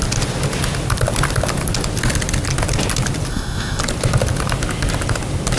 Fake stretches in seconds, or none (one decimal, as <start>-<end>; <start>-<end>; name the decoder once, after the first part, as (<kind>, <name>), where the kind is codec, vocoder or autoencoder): 3.3-3.8 (codec, SNAC)